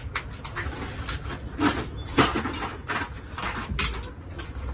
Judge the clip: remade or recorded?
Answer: recorded